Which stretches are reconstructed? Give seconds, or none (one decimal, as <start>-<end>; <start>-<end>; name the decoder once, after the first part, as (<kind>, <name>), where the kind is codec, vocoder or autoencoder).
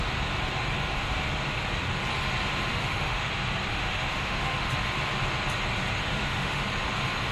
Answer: 2.7-3.3 (autoencoder, DAC-VAE); 3.7-4.7; 6.0-6.6